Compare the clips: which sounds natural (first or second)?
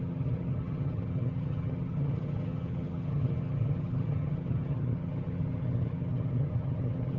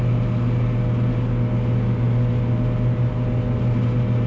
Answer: second